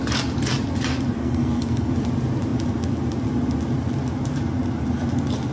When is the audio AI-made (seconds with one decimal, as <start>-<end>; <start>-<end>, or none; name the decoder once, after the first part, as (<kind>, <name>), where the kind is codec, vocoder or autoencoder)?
1.2-1.9 (codec, SNAC)